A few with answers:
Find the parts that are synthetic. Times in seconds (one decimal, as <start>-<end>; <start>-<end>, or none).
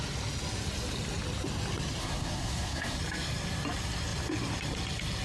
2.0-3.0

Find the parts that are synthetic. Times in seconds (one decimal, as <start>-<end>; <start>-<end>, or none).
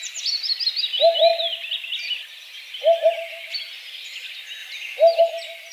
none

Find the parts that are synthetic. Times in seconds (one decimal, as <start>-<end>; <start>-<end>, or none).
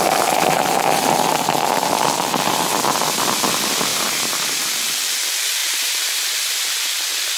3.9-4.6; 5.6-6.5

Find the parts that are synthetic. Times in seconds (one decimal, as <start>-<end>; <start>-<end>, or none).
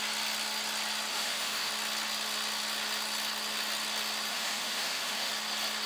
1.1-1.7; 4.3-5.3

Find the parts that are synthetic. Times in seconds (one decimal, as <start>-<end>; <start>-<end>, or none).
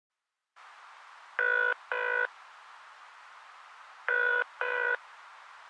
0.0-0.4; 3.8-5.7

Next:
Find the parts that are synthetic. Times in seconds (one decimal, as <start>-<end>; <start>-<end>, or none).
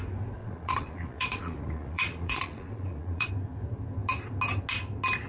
0.4-3.3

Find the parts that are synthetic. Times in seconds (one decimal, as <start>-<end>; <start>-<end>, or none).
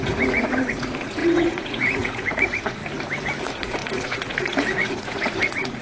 0.0-2.8; 3.4-5.8